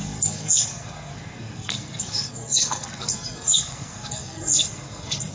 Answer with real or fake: fake